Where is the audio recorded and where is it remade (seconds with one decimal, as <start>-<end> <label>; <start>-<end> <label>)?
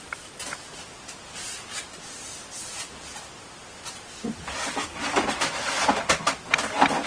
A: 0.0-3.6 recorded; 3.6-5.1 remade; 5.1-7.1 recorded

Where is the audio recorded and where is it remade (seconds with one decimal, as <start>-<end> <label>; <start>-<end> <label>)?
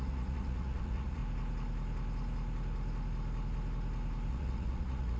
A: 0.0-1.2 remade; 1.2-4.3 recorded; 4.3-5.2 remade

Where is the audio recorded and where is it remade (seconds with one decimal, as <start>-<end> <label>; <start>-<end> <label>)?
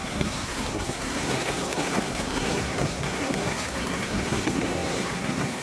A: 0.0-5.6 remade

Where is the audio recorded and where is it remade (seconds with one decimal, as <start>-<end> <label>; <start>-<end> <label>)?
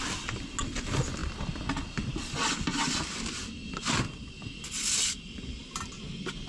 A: 0.0-6.5 recorded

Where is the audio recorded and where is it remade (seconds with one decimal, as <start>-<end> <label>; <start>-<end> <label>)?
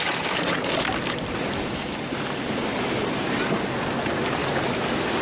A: 0.0-5.2 recorded